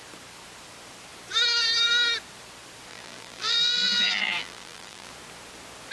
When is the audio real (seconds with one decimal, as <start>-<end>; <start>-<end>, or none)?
0.0-2.9; 5.1-5.9